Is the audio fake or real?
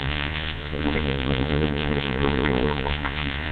fake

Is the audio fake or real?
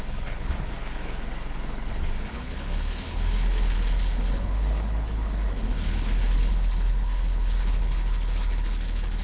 fake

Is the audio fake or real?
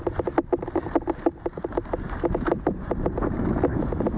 real